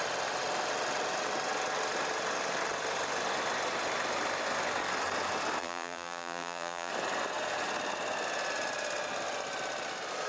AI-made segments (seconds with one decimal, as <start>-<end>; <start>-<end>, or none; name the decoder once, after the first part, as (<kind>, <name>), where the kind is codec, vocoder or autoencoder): 5.6-6.9 (vocoder, BigVGAN v2)

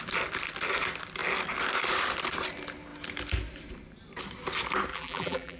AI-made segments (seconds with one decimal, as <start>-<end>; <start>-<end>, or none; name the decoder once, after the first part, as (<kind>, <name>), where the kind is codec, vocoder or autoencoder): 4.9-5.6 (vocoder, BigVGAN v2)

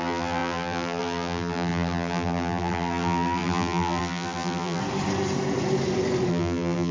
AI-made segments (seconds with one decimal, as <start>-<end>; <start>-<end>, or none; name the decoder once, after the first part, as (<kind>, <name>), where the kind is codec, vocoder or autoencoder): 0.0-4.8 (vocoder, BigVGAN v2); 6.3-6.9